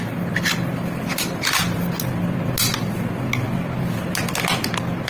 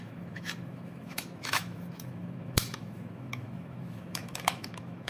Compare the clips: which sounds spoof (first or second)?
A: second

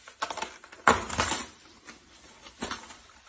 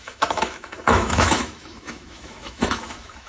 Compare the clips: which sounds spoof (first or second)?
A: second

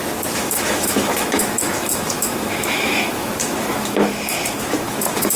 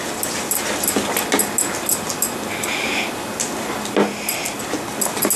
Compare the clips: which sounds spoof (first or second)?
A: first